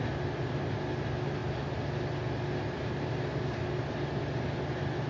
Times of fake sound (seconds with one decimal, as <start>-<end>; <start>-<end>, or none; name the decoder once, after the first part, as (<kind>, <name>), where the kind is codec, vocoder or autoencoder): none